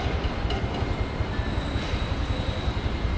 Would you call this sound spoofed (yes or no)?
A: no